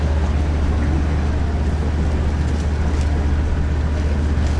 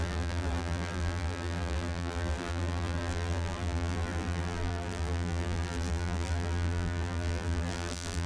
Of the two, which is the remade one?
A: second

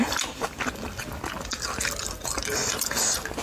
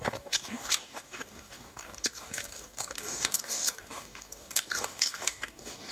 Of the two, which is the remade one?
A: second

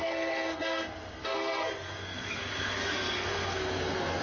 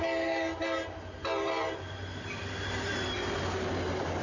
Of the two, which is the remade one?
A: first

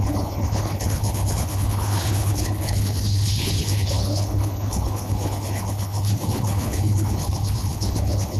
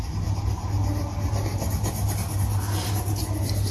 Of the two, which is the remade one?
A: first